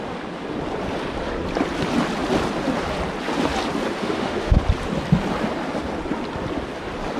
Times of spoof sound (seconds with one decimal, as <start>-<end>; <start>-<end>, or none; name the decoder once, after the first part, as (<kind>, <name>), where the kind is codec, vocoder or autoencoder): 4.0-4.6 (autoencoder, DAC-VAE)